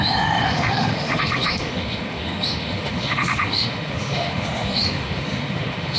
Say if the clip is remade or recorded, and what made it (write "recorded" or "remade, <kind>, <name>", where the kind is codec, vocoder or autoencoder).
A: remade, autoencoder, DAC-VAE